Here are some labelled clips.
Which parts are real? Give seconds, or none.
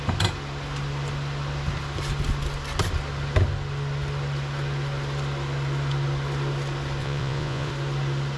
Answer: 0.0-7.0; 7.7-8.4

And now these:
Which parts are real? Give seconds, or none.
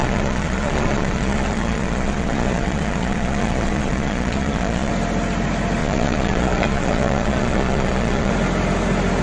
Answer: 4.9-5.8; 8.3-9.2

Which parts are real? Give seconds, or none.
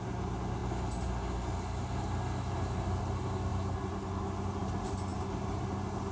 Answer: 0.0-6.1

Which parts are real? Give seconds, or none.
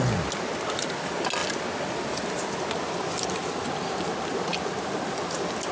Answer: 0.0-5.7